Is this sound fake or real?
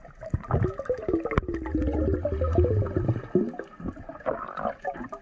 real